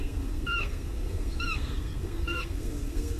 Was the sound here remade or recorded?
remade